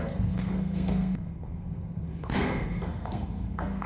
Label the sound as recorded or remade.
remade